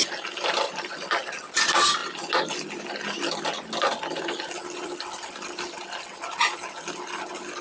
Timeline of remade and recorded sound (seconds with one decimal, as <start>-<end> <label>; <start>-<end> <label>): 0.0-7.6 recorded